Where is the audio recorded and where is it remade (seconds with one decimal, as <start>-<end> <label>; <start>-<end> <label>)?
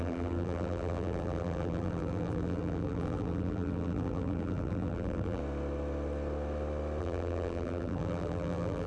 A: 0.0-5.4 remade; 5.4-7.0 recorded; 7.0-8.9 remade